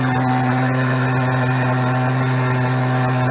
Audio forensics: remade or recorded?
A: recorded